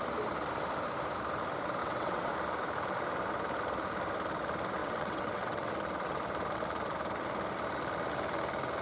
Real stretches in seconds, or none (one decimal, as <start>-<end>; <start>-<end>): 0.0-1.8; 2.3-4.8; 5.7-8.8